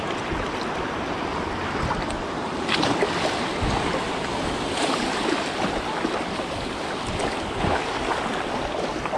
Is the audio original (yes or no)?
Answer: yes